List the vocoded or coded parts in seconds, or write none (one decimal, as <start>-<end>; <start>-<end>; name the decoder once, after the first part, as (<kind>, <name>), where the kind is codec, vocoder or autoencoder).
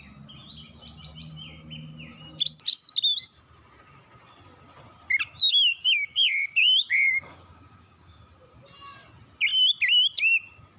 5.5-8.2 (codec, DAC)